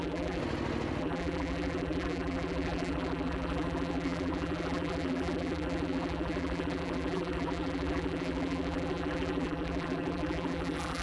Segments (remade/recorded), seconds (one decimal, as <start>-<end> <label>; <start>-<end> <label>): 0.0-0.4 remade; 0.4-1.0 recorded; 1.0-11.0 remade

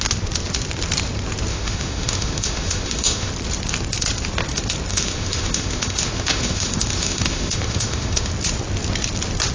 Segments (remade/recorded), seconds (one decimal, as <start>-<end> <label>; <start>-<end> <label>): 0.0-1.5 recorded; 1.5-3.3 remade; 3.3-4.9 recorded; 4.9-8.3 remade; 8.3-9.5 recorded

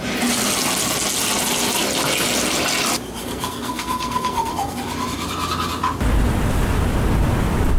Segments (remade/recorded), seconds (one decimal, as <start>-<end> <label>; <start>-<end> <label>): 0.0-3.2 recorded; 3.2-4.9 remade; 4.9-7.8 recorded

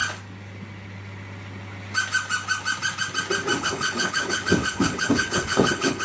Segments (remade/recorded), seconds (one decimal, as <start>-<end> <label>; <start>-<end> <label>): 0.0-3.6 recorded; 3.6-6.0 remade

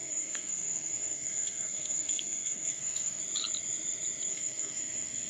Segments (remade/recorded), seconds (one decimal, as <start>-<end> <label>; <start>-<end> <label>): 0.0-3.2 remade; 3.2-4.3 recorded; 4.3-5.3 remade

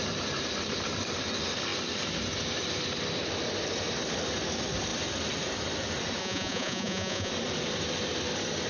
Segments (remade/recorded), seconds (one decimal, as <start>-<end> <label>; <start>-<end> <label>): 0.0-6.2 recorded; 6.2-7.3 remade; 7.3-8.7 recorded

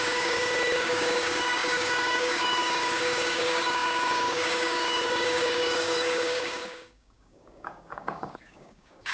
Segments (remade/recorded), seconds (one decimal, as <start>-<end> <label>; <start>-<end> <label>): 0.0-9.1 remade